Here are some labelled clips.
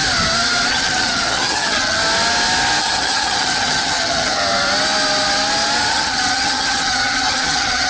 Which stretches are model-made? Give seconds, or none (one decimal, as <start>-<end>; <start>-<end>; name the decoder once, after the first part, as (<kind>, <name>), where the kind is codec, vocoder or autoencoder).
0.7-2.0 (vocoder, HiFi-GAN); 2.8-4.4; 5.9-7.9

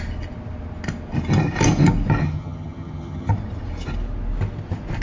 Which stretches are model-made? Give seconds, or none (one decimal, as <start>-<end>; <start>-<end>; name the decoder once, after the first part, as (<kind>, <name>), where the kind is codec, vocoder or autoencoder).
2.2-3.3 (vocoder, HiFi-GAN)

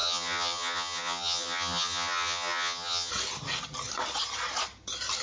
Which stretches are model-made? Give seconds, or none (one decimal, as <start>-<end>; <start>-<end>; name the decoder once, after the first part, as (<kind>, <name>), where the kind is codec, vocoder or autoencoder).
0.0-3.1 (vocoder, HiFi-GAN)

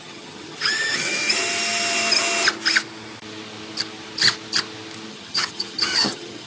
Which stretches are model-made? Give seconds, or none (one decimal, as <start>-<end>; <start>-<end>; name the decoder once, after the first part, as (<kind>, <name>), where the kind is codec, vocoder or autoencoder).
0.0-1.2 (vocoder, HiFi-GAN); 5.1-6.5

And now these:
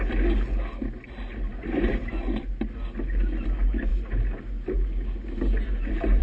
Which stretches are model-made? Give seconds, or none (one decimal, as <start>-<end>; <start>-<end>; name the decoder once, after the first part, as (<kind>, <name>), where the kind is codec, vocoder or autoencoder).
none

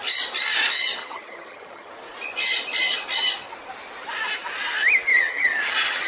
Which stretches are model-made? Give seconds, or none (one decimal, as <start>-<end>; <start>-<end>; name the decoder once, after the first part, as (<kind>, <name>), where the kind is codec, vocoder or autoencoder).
1.0-1.9 (vocoder, HiFi-GAN); 5.1-6.1

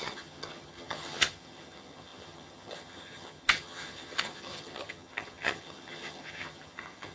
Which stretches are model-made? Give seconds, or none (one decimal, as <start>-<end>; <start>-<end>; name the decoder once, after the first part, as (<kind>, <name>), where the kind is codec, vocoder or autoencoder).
0.0-7.1 (vocoder, HiFi-GAN)